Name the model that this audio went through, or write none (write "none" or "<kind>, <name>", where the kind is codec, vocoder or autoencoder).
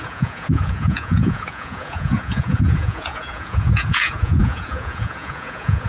vocoder, Vocos